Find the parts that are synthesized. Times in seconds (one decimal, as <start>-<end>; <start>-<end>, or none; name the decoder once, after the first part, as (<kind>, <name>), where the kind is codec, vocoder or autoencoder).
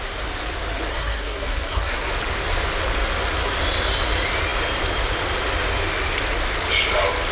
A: 0.9-2.1 (codec, SNAC)